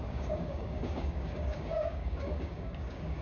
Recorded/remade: remade